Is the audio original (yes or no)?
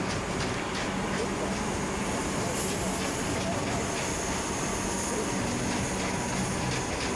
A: yes